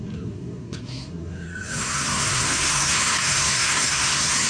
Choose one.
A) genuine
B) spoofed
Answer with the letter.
B